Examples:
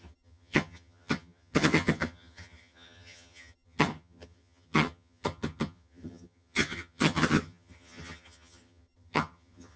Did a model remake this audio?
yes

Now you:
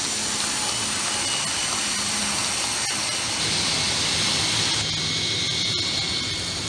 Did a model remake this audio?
no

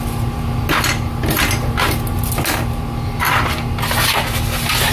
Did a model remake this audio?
no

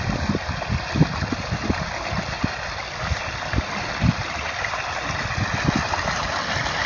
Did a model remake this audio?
no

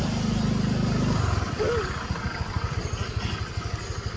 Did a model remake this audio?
yes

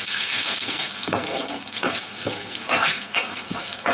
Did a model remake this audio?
yes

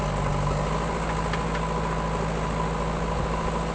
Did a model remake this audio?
no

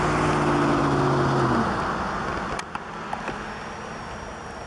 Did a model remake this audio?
no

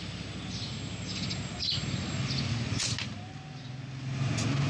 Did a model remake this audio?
no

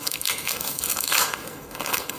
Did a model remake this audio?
yes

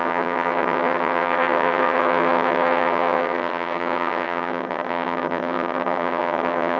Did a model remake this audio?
yes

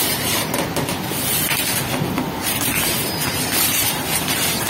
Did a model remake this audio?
no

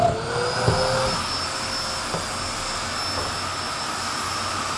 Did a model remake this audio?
no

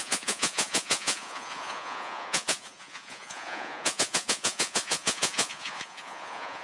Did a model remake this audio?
yes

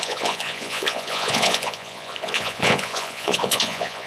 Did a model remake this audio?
yes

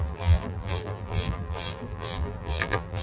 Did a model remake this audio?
yes